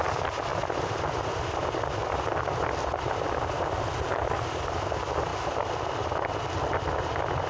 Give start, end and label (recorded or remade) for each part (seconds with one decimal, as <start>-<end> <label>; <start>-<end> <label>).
0.0-7.5 recorded